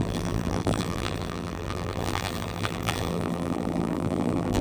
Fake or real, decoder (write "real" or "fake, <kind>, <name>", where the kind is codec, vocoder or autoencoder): fake, vocoder, BigVGAN v2